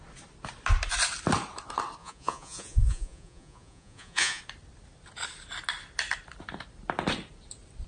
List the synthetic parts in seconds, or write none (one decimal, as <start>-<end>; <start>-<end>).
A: 2.0-4.4